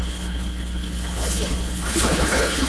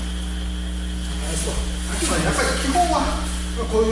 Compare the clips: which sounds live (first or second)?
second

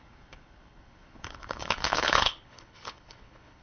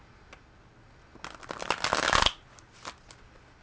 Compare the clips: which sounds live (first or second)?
second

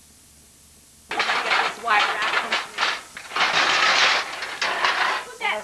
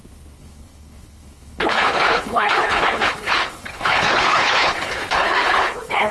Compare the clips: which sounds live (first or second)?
first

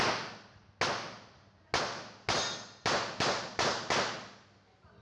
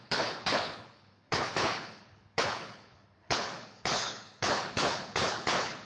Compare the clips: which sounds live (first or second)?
first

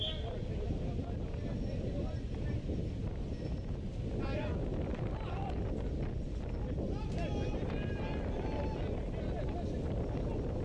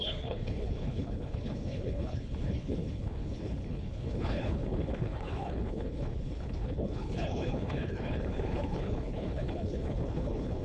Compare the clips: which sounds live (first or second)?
first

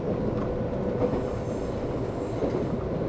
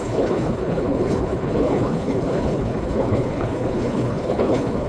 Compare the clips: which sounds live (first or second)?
first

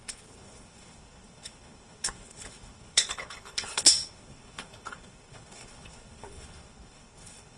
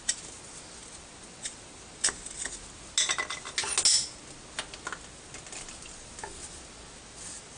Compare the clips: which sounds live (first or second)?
second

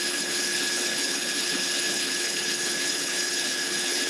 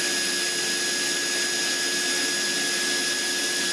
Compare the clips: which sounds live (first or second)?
second